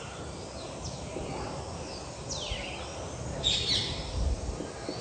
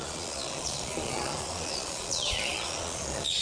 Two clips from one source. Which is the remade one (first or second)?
second